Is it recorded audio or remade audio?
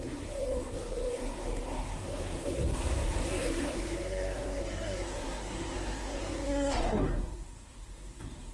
remade